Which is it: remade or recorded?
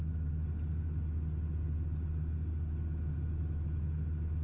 recorded